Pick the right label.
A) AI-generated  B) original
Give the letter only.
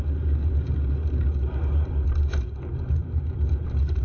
A